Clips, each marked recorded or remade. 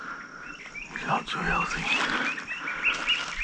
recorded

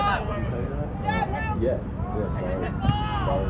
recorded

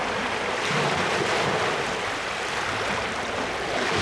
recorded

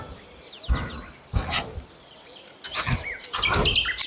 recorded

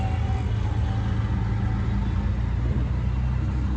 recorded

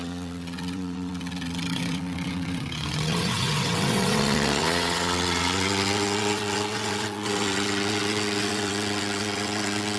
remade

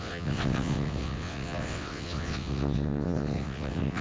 remade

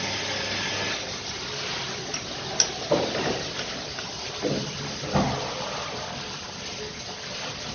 recorded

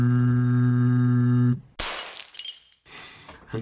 recorded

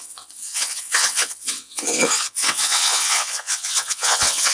remade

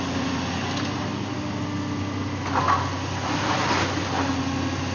recorded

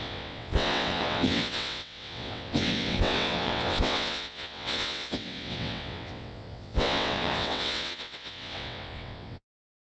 remade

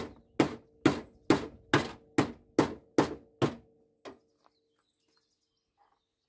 recorded